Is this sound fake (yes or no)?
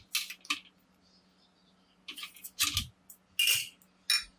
no